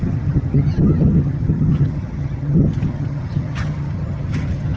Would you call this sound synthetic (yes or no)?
yes